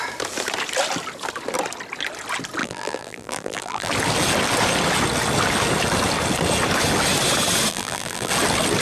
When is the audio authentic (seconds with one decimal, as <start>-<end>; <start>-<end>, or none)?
0.0-2.6; 3.9-7.7; 8.3-8.8